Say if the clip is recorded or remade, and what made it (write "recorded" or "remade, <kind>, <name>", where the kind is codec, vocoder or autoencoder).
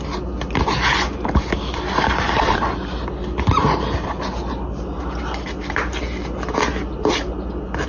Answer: recorded